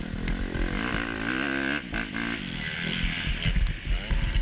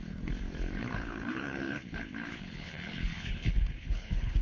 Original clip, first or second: first